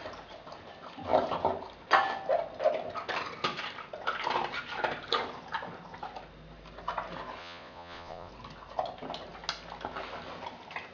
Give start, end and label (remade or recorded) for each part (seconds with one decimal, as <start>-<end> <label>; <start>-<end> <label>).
0.0-7.4 recorded; 7.4-8.3 remade; 8.3-10.9 recorded